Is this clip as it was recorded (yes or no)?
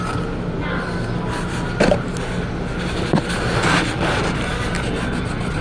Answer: yes